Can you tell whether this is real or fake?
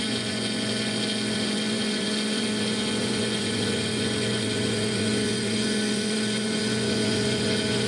fake